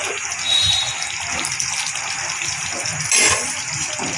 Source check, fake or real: real